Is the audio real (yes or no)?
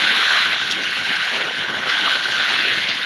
no